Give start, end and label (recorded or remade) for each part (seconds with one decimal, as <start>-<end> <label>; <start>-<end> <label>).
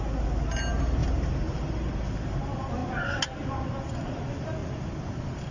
0.0-1.0 recorded; 1.0-1.9 remade; 1.9-5.5 recorded